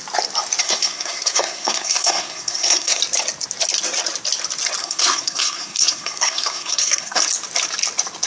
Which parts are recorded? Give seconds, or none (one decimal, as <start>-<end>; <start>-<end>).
0.0-0.6; 3.0-4.8; 7.2-8.3